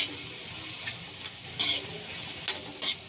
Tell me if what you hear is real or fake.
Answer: real